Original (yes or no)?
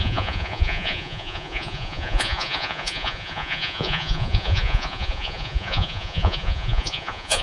no